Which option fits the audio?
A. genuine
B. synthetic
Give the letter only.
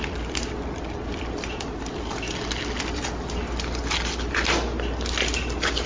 A